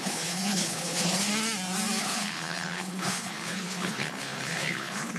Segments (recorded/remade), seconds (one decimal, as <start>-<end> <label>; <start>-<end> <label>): 0.0-1.3 remade; 1.3-2.0 recorded; 2.0-5.2 remade